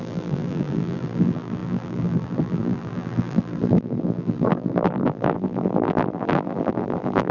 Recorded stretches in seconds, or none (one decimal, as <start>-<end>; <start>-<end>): none

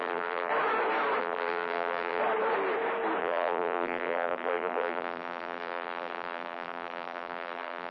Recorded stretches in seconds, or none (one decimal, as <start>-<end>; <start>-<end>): 0.5-1.2; 2.2-3.2